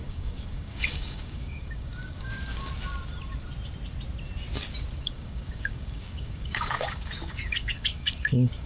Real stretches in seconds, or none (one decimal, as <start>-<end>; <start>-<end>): 2.7-5.0